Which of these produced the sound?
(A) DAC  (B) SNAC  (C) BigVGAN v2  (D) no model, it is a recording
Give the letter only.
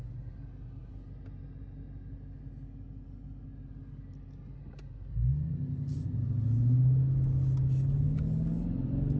D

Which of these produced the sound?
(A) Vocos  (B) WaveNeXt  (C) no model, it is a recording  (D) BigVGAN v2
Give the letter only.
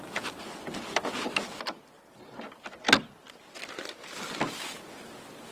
C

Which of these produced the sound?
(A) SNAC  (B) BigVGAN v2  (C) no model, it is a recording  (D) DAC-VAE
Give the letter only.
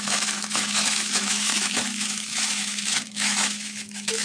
D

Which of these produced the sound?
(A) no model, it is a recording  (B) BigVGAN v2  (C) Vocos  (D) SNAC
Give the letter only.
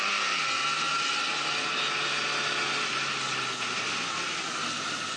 A